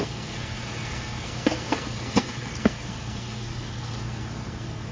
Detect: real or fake fake